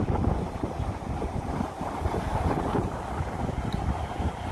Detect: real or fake real